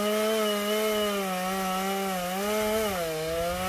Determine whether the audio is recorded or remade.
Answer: recorded